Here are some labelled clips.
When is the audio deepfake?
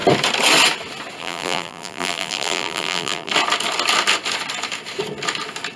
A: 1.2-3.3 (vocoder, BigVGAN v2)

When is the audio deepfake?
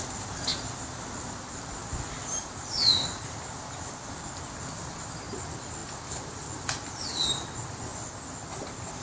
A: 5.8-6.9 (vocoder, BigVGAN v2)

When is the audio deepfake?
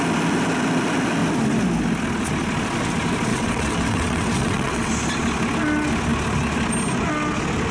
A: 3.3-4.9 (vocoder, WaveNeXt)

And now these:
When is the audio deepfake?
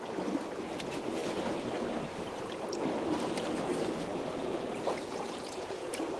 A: 4.1-6.2 (vocoder, Vocos)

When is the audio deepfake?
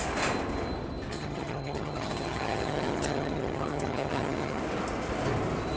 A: 1.1-4.6 (vocoder, HiFi-GAN)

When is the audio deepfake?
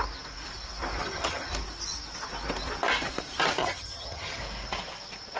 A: 1.0-1.5 (vocoder, HiFi-GAN); 3.6-4.4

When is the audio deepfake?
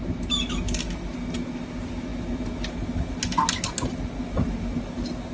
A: none